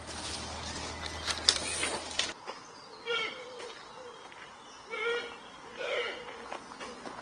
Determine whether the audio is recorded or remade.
recorded